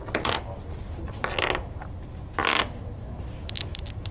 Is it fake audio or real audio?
real